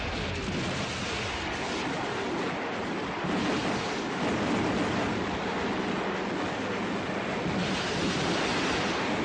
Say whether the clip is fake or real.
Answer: real